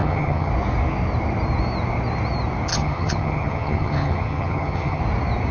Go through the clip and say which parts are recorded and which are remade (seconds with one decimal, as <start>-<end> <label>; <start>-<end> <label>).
0.0-0.5 remade; 0.5-2.7 recorded; 2.7-5.0 remade; 5.0-5.5 recorded